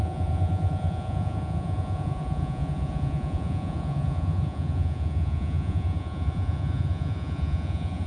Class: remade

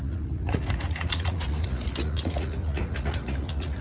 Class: remade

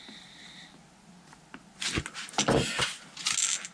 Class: recorded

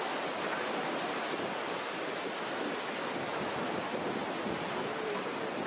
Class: recorded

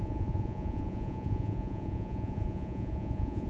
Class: remade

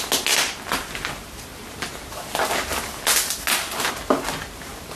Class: recorded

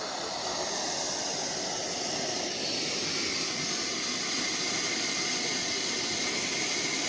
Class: recorded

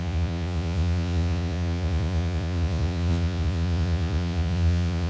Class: remade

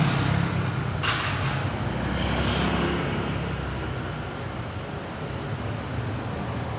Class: recorded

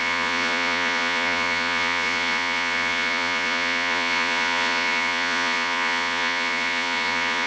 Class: remade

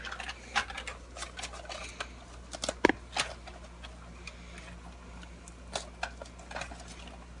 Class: recorded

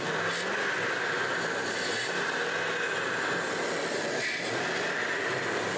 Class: recorded